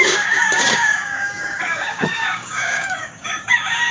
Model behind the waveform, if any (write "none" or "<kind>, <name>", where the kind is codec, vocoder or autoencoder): codec, DAC